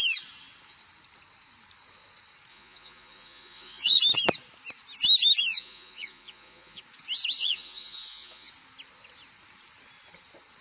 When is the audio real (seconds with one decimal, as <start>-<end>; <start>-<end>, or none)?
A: 0.0-2.5; 4.0-5.5; 6.8-7.4; 8.5-10.6

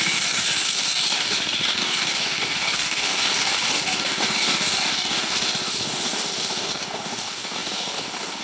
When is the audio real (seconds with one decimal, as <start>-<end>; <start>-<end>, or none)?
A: none

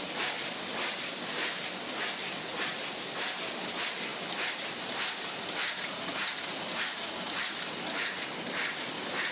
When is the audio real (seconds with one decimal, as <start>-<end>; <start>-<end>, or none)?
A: 0.0-9.3